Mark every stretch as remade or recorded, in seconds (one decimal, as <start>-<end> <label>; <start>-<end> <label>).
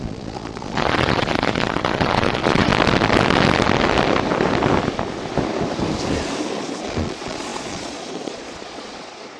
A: 0.0-2.7 remade; 2.7-6.8 recorded; 6.8-9.4 remade